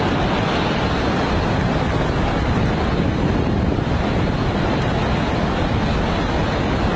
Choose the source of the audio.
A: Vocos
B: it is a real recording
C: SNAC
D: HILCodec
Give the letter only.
B